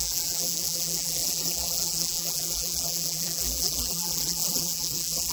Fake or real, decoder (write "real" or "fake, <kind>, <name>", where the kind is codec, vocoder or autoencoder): fake, vocoder, BigVGAN v2